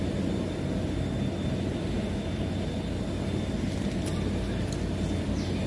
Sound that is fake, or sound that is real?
real